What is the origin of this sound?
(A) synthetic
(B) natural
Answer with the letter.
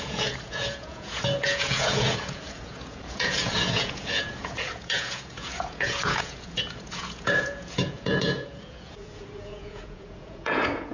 A